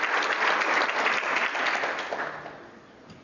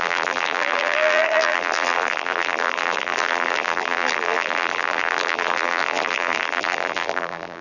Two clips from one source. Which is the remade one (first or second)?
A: second